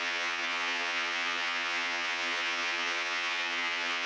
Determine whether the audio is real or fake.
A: fake